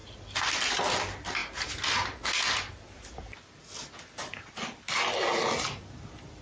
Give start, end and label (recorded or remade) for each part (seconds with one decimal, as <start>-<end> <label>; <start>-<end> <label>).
0.0-6.4 recorded